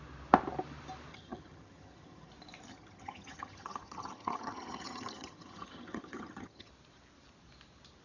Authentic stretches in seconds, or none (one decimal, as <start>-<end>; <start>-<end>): 0.0-1.1; 2.3-2.7; 6.7-8.0